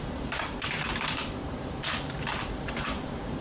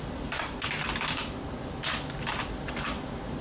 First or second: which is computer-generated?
first